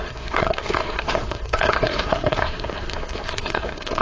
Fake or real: fake